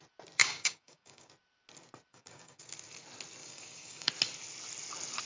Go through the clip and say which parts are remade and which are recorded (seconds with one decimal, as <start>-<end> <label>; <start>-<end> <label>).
0.0-0.4 recorded; 0.4-1.3 remade; 1.3-2.1 recorded; 2.1-2.6 remade; 2.6-3.4 recorded; 3.4-4.1 remade; 4.1-5.3 recorded